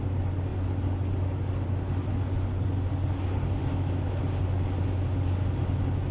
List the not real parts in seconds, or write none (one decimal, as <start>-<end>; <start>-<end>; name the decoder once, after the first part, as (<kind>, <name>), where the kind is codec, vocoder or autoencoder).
3.6-4.2 (autoencoder, DAC-VAE)